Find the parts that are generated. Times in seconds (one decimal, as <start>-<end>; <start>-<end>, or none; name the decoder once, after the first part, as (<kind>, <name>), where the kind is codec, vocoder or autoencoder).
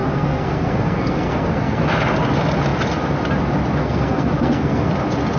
0.0-1.8 (codec, SNAC); 3.8-4.9